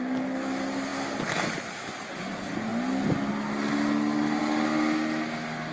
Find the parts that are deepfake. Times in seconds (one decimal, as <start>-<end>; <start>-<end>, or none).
none